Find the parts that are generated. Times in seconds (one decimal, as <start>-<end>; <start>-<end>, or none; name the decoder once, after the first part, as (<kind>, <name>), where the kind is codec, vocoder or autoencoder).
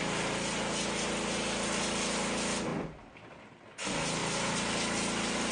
none